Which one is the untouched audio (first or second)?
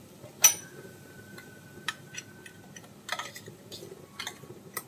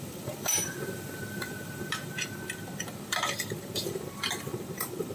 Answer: first